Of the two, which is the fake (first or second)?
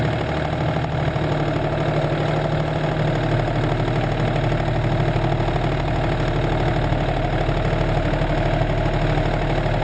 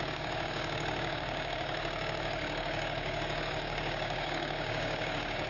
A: second